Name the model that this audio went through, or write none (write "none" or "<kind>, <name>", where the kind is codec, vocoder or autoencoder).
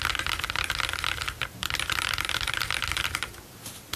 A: none